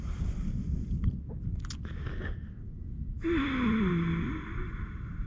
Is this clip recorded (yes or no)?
yes